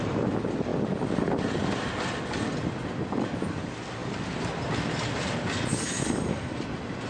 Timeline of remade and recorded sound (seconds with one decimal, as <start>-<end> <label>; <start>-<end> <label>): 0.0-7.1 recorded